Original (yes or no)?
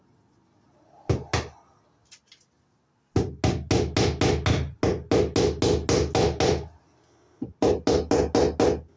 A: yes